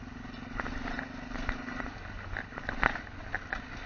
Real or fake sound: real